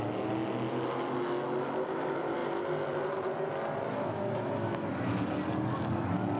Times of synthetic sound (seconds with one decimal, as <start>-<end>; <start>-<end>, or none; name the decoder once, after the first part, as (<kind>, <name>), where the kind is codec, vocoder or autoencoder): none